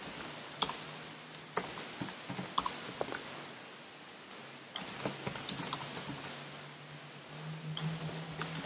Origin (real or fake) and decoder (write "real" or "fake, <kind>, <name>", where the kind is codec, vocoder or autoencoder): real